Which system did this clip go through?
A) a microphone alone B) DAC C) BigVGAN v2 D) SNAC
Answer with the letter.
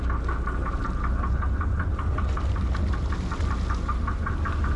A